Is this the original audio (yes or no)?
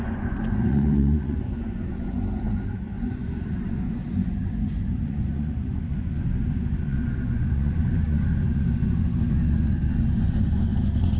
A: no